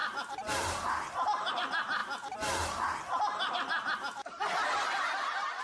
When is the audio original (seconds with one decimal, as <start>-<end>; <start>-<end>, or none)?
1.5-5.6